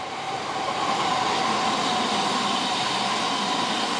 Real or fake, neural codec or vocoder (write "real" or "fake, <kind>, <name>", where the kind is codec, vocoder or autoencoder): real